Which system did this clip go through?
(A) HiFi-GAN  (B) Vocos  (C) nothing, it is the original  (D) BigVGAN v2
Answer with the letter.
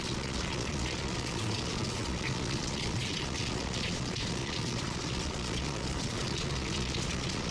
B